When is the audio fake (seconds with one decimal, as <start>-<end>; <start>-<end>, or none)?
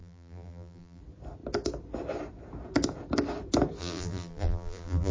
0.0-1.0; 3.8-5.1